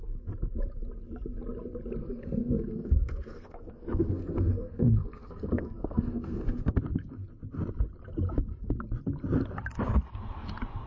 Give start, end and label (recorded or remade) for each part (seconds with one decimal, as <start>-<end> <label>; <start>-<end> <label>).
0.0-2.0 recorded; 2.0-6.8 remade; 6.8-10.9 recorded